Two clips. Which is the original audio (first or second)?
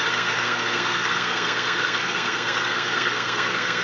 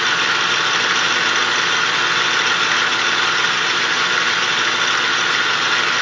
second